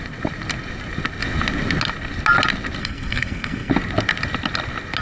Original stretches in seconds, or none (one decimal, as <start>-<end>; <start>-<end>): 0.0-2.8; 3.7-5.0